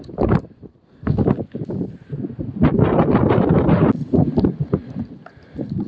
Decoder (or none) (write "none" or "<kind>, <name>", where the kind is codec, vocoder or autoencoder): none